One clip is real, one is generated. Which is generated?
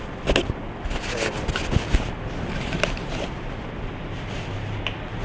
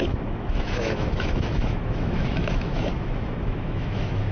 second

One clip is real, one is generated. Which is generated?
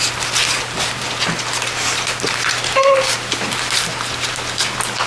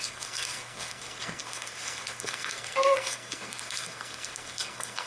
second